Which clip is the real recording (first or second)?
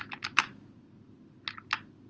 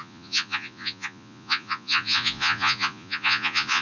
first